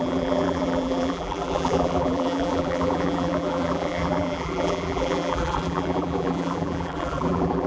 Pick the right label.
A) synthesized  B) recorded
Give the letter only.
A